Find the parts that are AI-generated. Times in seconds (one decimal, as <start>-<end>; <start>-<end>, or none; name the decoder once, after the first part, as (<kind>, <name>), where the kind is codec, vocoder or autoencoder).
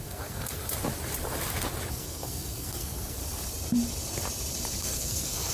0.0-0.6 (codec, SNAC); 1.9-3.2; 4.8-5.5